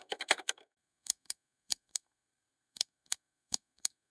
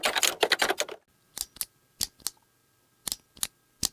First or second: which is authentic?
second